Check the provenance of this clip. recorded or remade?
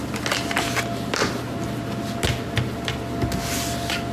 recorded